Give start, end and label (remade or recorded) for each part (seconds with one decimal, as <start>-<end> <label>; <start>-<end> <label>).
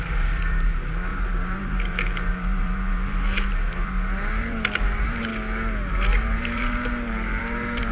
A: 0.0-5.3 remade; 5.3-5.9 recorded; 5.9-7.9 remade